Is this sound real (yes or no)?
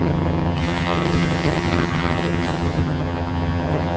no